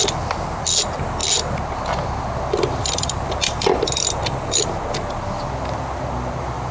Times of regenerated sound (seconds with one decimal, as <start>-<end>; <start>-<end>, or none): none